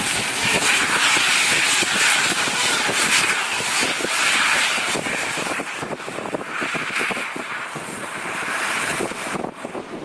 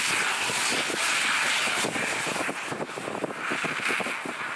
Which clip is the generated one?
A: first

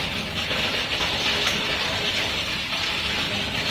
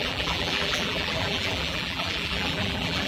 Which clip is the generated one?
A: second